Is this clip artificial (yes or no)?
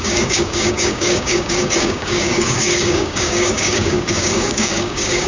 yes